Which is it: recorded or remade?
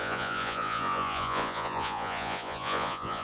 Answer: remade